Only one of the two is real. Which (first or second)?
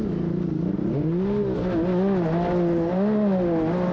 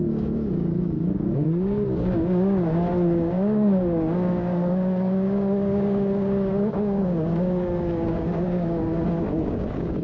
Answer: first